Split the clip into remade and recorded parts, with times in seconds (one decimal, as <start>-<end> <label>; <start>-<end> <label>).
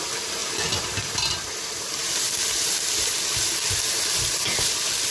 0.0-5.1 recorded